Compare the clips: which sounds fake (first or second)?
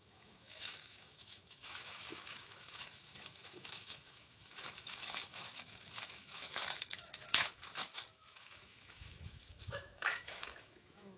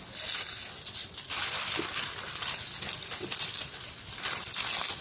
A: first